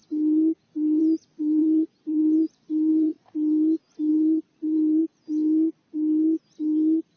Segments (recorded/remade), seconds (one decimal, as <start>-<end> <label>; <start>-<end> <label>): 0.0-1.0 recorded; 1.0-3.1 remade; 3.1-4.1 recorded; 4.1-5.0 remade; 5.0-7.2 recorded